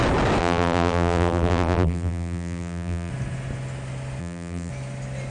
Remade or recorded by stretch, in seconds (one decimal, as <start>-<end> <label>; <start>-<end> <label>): 0.0-0.4 recorded; 0.4-3.1 remade; 3.1-4.2 recorded; 4.2-4.7 remade; 4.7-5.3 recorded